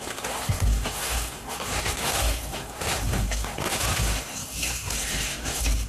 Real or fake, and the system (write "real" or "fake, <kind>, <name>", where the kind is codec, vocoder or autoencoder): fake, codec, SNAC